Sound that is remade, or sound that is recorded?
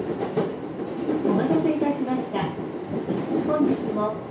recorded